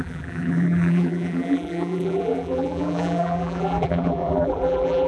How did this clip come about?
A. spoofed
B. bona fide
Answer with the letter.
A